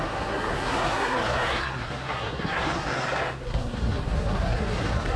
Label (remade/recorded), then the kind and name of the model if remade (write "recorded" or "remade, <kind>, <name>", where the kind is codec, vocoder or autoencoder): remade, codec, SNAC